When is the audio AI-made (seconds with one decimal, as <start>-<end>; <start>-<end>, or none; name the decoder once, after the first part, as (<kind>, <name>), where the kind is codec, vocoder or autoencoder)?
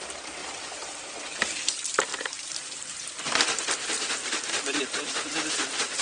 0.4-1.1 (vocoder, BigVGAN v2); 2.1-2.9; 4.2-4.8